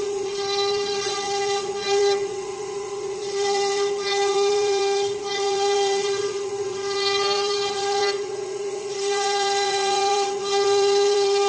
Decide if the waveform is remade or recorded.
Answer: remade